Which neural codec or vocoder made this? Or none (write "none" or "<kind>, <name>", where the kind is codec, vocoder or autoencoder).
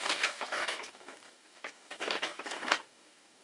codec, DAC